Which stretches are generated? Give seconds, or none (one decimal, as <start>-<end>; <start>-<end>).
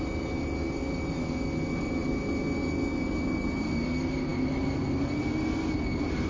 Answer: none